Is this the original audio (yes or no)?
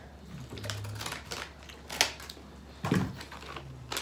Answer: yes